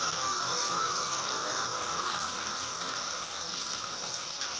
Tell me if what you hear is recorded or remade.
remade